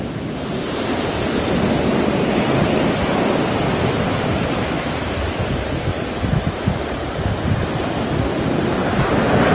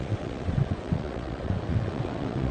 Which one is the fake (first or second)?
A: second